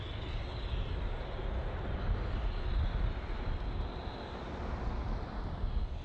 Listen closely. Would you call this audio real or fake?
real